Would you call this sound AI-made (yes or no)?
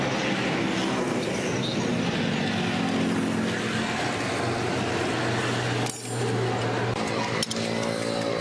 no